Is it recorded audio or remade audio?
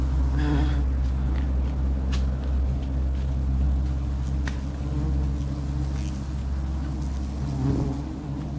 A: recorded